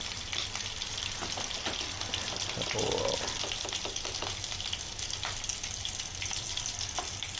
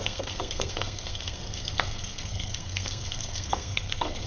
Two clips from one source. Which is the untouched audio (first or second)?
first